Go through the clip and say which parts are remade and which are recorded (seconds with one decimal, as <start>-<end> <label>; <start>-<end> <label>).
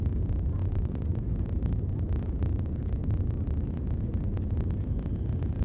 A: 0.0-0.6 recorded; 0.6-1.2 remade; 1.2-5.6 recorded